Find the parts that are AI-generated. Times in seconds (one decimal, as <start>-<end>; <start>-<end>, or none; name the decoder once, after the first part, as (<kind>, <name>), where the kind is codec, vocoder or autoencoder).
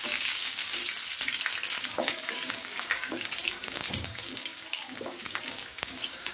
0.0-0.8 (codec, DAC); 1.8-6.3